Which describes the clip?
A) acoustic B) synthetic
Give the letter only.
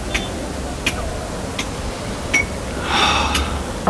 A